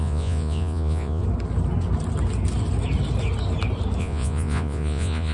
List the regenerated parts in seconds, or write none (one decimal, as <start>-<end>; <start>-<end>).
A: 0.0-1.2; 4.0-5.3